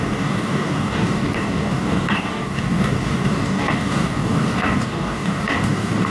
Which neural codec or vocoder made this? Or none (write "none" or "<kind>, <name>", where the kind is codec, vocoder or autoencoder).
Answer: codec, DAC